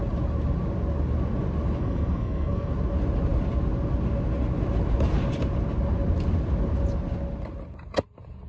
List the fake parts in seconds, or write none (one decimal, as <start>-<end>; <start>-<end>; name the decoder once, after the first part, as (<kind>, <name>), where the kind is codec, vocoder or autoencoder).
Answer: 1.8-2.7 (codec, SNAC)